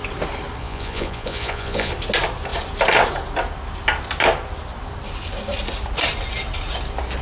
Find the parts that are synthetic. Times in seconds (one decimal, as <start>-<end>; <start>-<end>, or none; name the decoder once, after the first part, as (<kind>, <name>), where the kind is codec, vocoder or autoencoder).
0.6-1.9 (vocoder, Vocos)